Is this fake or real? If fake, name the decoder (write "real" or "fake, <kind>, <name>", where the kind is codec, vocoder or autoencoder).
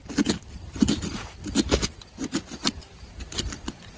fake, vocoder, BigVGAN v2